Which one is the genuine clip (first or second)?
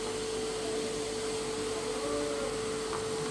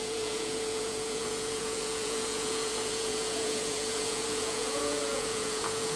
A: first